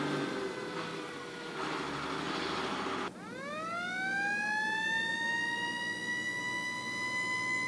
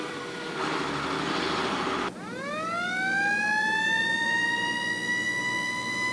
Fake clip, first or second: second